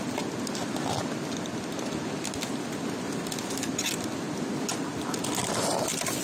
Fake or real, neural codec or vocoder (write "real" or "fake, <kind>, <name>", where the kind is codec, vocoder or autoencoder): real